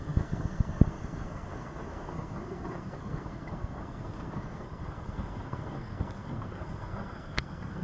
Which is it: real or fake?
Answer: fake